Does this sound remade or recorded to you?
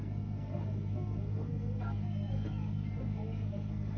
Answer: remade